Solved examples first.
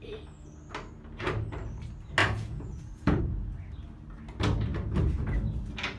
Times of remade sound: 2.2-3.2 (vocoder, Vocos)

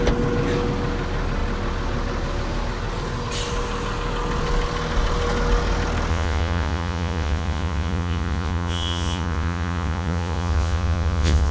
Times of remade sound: 6.1-11.5 (vocoder, Vocos)

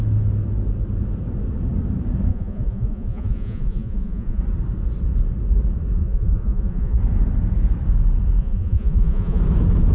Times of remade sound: 2.3-4.4 (vocoder, Vocos); 6.0-7.0; 8.4-9.4

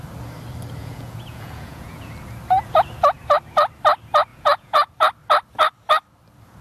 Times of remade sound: 0.8-2.1 (vocoder, Vocos); 4.3-4.9

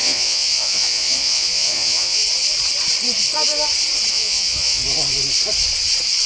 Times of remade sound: 0.0-2.2 (vocoder, Vocos); 4.1-4.8

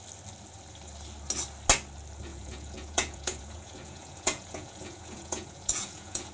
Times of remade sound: 2.3-6.3 (vocoder, Vocos)